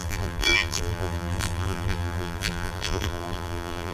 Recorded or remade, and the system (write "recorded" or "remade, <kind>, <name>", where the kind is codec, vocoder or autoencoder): remade, vocoder, BigVGAN v2